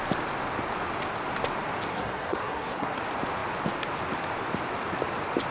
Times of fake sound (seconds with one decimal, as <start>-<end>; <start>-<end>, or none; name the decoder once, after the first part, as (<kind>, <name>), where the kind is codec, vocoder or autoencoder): 1.9-3.0 (codec, SNAC)